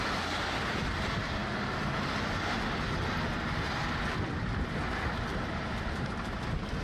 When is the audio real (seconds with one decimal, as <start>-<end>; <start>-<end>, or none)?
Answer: 0.0-6.8